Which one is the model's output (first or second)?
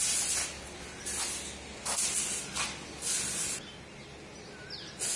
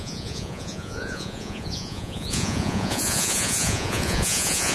second